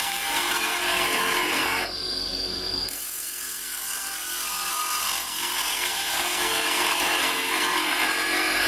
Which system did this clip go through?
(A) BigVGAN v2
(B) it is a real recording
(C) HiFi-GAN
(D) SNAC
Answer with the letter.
D